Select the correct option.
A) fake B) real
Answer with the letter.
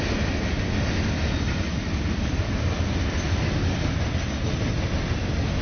B